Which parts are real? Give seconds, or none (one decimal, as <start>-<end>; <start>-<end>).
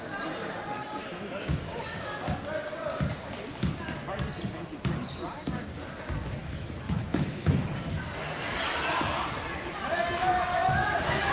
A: 0.0-1.0; 2.1-6.4; 7.7-10.5